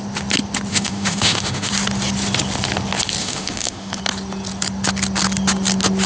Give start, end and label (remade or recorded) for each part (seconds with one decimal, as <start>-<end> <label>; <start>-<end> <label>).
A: 0.0-0.7 recorded; 0.7-1.7 remade; 1.7-3.2 recorded; 3.2-4.0 remade; 4.0-6.1 recorded